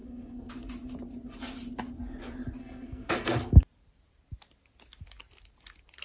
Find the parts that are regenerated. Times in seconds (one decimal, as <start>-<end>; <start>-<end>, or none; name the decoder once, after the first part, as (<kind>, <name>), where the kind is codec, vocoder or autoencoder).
0.0-0.5 (codec, SNAC); 2.6-3.6